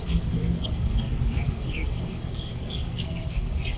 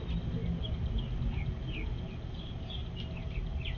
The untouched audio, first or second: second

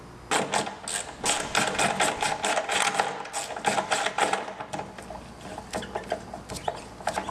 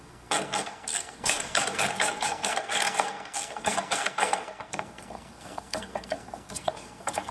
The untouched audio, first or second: first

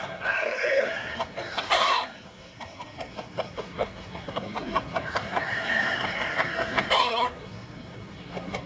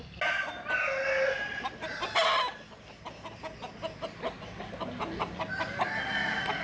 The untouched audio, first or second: second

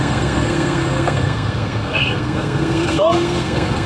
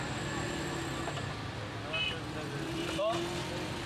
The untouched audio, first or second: second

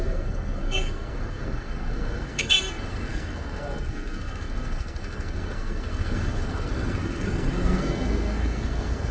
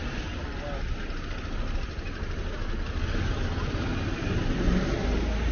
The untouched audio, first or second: second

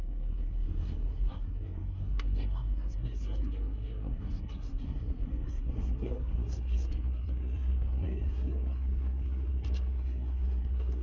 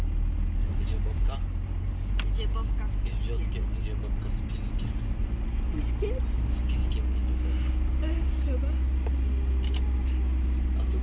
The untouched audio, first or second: second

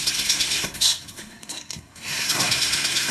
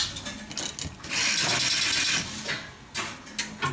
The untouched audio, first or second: second